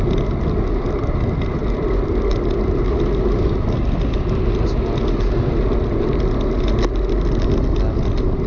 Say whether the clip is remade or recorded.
recorded